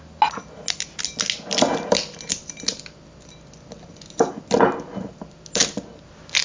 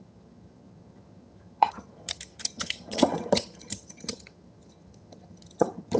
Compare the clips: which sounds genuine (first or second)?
first